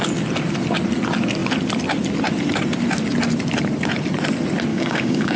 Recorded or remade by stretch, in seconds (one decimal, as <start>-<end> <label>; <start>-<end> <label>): 0.0-4.7 recorded; 4.7-5.4 remade